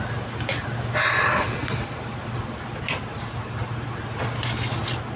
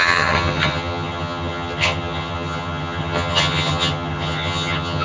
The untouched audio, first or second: first